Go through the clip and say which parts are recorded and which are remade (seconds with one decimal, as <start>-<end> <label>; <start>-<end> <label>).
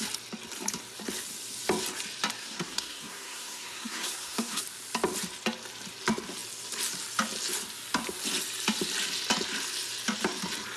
0.0-2.4 recorded; 2.4-4.6 remade; 4.6-10.8 recorded